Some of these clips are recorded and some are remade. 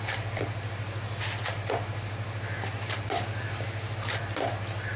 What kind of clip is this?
recorded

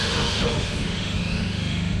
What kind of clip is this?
remade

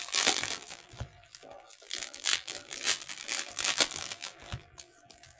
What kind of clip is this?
remade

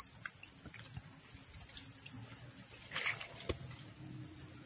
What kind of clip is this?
recorded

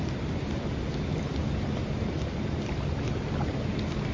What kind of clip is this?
recorded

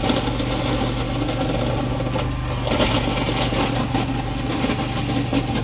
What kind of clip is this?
recorded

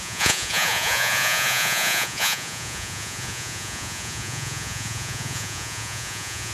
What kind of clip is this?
remade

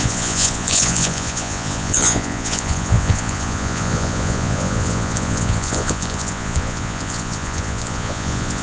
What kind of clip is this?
remade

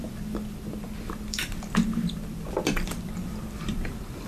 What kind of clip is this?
remade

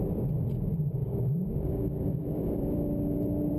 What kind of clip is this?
remade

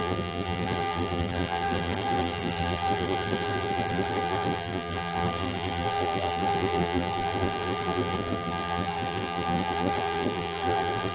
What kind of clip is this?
remade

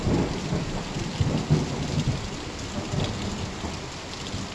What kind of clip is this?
recorded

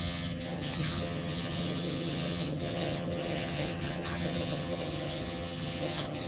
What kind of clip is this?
remade